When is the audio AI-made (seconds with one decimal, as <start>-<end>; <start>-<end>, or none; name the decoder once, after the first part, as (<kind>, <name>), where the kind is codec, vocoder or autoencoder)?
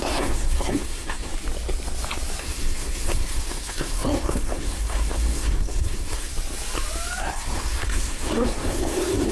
0.0-1.3 (codec, SNAC); 2.4-6.3; 7.2-9.3